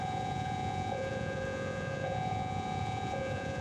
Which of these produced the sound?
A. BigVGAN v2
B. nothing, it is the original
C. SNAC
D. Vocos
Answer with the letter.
D